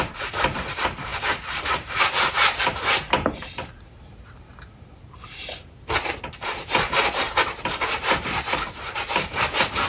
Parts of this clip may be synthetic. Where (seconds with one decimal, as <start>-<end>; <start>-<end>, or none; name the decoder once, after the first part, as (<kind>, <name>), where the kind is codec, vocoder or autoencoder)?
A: 0.0-9.9 (vocoder, BigVGAN v2)